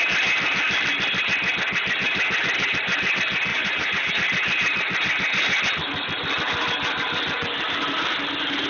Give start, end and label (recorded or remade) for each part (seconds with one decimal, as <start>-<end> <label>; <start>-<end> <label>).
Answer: 0.0-3.5 recorded; 3.5-4.1 remade; 4.1-8.7 recorded